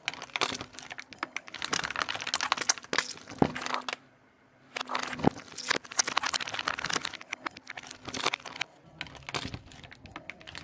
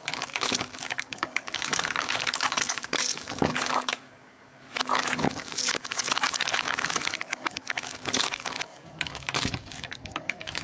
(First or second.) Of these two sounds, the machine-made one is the second